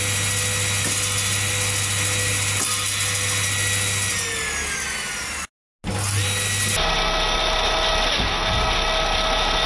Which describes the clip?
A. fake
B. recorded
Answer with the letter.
B